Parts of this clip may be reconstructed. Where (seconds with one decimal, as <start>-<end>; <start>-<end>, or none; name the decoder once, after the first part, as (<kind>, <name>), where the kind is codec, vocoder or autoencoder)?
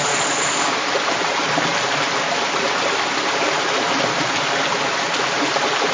none